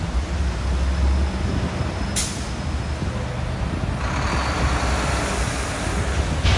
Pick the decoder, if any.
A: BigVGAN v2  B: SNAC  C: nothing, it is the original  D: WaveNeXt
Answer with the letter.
C